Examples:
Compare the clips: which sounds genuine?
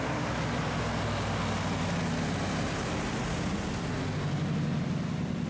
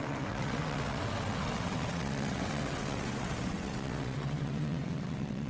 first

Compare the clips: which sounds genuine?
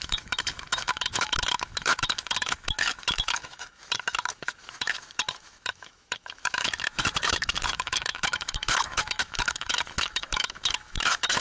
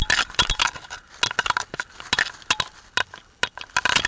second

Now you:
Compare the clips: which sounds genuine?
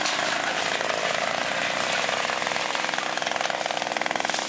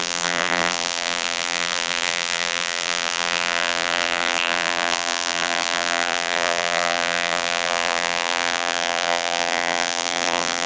first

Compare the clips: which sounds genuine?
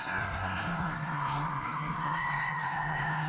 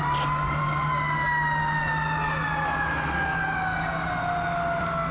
second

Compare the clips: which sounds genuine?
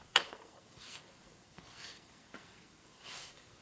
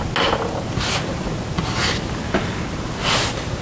second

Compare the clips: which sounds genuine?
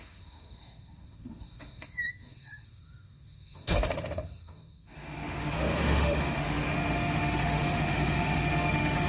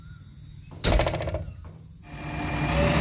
second